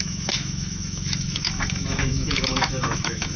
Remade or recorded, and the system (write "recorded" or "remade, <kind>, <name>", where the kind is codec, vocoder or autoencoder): remade, autoencoder, DAC-VAE